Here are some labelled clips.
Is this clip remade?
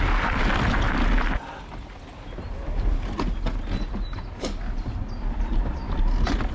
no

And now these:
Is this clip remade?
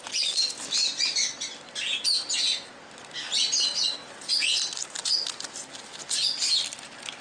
no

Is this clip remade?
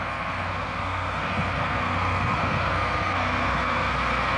yes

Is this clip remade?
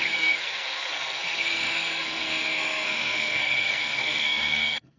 yes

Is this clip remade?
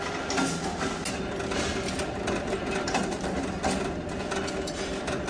no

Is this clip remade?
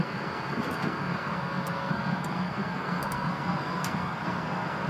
yes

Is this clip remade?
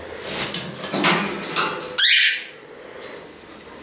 no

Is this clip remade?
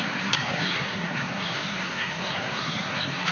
yes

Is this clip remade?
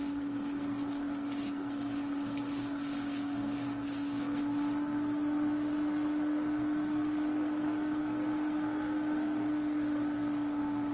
yes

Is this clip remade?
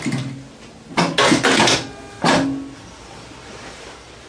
no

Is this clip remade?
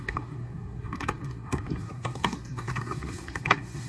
yes